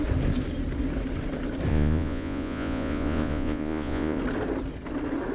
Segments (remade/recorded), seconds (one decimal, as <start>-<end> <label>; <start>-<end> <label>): 0.0-1.7 recorded; 1.7-4.2 remade; 4.2-5.3 recorded